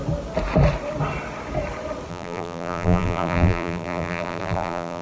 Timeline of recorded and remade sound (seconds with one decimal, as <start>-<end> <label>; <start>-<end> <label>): 0.0-2.1 recorded; 2.1-5.0 remade